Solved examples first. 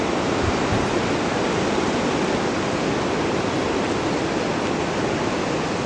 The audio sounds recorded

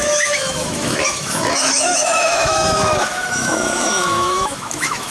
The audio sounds remade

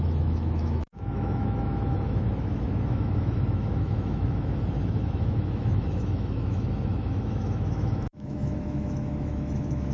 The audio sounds remade